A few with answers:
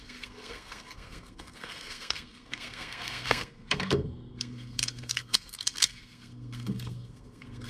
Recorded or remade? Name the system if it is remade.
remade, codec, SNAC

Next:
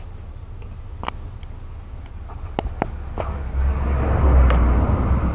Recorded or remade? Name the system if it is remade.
recorded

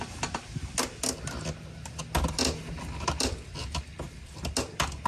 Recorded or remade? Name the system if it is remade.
recorded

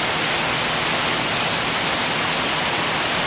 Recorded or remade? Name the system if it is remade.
recorded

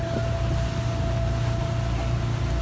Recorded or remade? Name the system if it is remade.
recorded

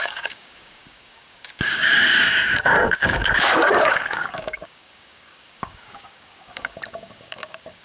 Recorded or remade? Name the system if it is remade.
remade, codec, DAC